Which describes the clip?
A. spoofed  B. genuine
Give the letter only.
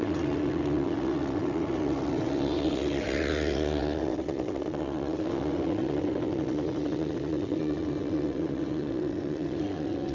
A